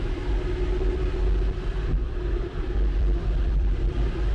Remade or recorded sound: remade